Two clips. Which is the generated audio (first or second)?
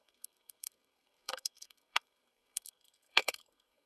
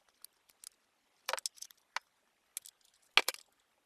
first